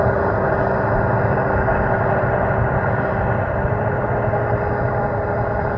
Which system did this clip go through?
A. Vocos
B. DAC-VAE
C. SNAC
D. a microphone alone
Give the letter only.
D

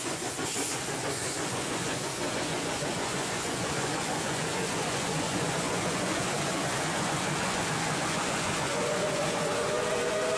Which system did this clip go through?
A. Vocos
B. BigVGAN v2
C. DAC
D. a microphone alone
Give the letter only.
A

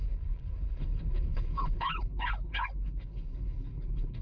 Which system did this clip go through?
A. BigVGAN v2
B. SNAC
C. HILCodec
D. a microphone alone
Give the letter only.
C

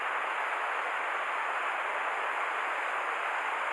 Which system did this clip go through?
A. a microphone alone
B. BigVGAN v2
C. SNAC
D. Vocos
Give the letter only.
A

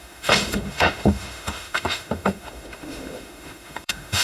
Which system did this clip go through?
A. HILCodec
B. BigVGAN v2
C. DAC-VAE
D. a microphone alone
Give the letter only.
C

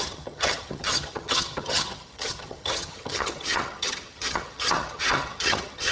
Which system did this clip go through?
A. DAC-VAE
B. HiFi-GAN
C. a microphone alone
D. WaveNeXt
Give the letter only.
B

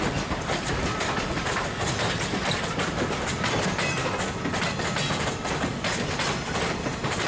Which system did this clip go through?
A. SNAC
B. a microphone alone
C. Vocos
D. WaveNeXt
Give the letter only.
B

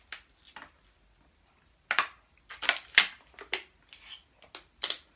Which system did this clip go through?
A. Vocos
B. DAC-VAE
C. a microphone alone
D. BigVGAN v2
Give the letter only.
C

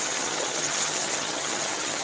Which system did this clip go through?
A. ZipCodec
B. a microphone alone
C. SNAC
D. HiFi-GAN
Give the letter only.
D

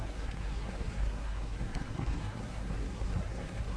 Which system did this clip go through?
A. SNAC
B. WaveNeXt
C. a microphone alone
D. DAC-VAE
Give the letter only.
A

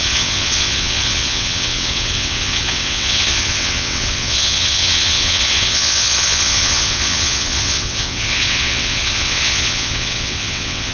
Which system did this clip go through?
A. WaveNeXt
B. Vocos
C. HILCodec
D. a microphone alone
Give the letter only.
A